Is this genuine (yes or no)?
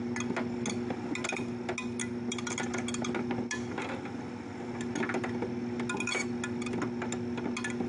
yes